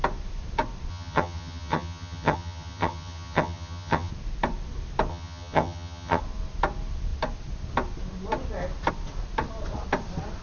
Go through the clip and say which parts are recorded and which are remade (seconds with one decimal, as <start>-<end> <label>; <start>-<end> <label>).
0.0-0.9 recorded; 0.9-4.1 remade; 4.1-5.1 recorded; 5.1-6.2 remade; 6.2-10.4 recorded